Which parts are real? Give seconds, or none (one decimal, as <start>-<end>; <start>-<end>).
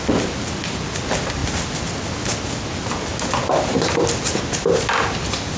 0.0-5.6